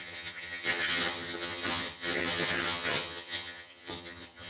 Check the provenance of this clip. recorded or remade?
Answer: remade